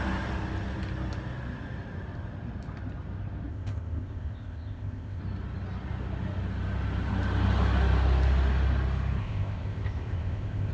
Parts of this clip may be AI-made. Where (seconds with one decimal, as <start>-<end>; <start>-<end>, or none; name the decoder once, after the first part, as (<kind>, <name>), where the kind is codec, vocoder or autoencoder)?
3.5-5.2 (codec, ZipCodec); 9.2-10.7